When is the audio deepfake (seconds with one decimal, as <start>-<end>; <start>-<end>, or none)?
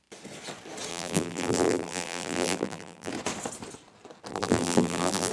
0.9-3.1; 4.3-5.3